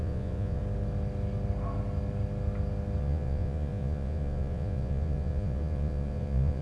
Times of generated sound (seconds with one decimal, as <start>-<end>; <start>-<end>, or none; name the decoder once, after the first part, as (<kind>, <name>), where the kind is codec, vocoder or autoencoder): 0.0-0.6 (vocoder, Vocos); 3.0-6.6